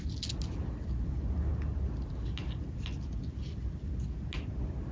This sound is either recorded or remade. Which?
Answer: recorded